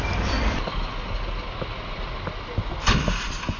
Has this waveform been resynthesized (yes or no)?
no